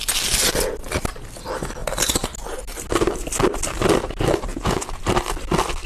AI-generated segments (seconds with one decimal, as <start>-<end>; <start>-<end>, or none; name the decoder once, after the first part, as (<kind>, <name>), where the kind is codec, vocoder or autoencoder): 4.5-5.0 (vocoder, Vocos)